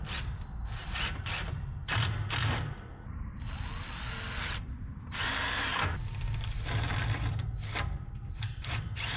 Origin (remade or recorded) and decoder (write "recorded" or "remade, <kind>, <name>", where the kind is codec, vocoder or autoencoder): remade, vocoder, BigVGAN v2